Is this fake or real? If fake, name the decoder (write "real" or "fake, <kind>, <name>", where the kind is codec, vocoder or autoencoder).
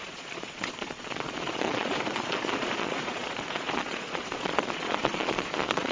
fake, vocoder, Vocos